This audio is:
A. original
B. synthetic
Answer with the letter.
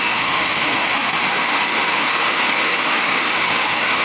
B